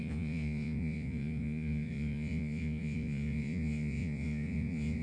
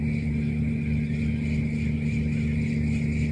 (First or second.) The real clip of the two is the second